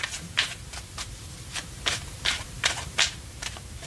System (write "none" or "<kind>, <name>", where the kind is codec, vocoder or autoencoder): vocoder, BigVGAN v2